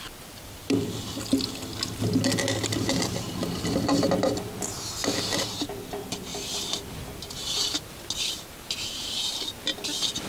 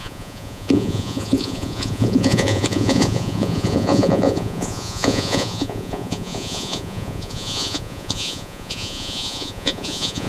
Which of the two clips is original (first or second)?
first